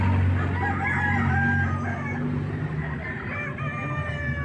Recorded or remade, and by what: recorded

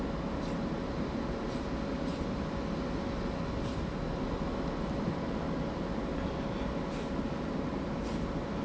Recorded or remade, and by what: recorded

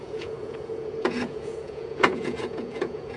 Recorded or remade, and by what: remade, vocoder, Vocos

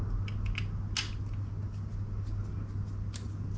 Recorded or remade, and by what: recorded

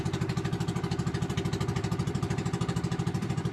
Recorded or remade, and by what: remade, vocoder, BigVGAN v2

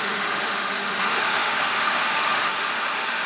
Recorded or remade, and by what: remade, autoencoder, DAC-VAE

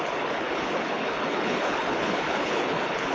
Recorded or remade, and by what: remade, codec, HILCodec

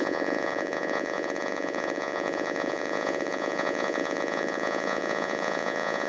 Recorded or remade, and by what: remade, vocoder, Vocos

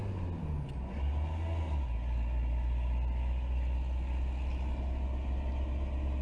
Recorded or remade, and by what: recorded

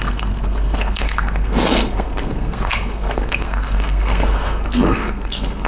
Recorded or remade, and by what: remade, codec, SNAC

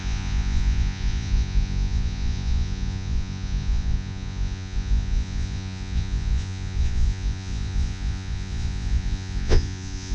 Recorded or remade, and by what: remade, vocoder, Vocos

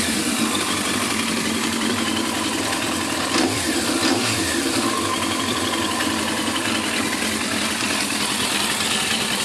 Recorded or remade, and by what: remade, vocoder, BigVGAN v2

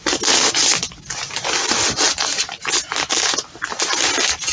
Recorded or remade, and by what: recorded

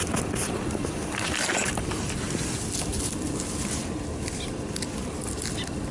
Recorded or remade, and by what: recorded